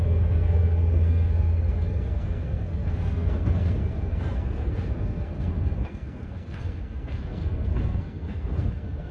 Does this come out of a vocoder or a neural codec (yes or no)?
yes